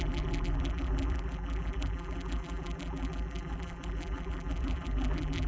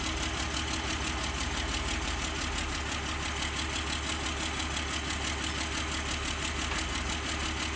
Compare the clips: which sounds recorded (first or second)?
second